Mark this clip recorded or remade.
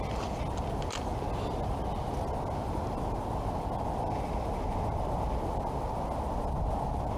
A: recorded